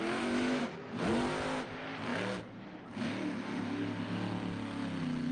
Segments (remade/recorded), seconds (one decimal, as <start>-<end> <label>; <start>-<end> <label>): 0.0-0.6 remade; 0.6-5.3 recorded